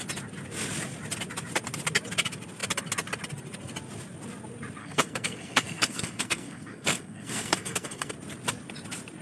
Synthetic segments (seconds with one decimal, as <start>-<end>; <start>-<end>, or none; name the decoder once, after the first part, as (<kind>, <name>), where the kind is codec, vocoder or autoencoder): 4.8-8.1 (codec, SNAC)